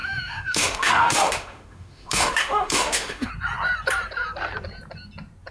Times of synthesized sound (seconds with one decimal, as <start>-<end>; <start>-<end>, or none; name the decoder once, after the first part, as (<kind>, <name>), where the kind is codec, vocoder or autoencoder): 0.0-3.3 (autoencoder, DAC-VAE)